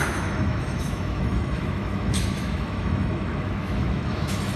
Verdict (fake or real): fake